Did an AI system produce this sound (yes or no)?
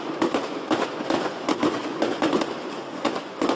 yes